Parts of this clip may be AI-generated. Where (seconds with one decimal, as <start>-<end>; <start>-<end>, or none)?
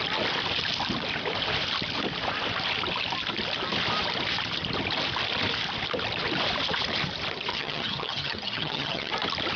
7.5-9.1